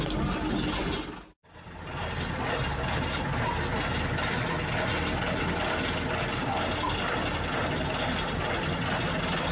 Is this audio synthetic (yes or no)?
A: no